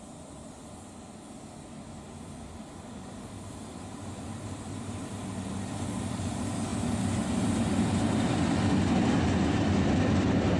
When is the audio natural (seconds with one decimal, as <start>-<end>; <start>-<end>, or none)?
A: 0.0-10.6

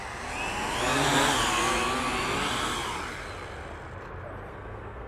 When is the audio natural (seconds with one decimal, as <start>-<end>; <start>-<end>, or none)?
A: 0.0-4.5

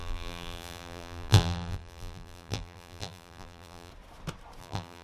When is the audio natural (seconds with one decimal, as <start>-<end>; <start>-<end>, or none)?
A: 3.9-4.6

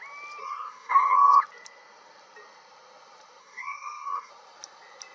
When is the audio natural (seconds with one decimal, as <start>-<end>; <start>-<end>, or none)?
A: 0.0-0.4; 1.4-3.4; 4.3-5.1

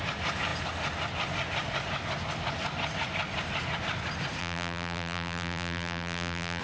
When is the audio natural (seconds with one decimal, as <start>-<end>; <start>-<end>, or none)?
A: 0.0-4.4

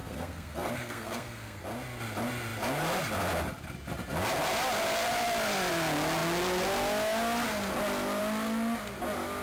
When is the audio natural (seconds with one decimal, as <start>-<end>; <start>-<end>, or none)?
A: 1.6-9.4

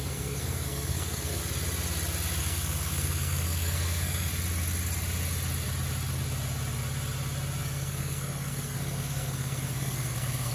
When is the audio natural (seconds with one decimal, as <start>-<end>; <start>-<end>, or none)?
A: 1.4-2.4; 4.3-7.6